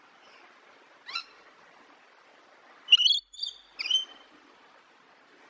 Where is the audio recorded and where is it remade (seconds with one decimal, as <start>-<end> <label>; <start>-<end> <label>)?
0.0-5.5 recorded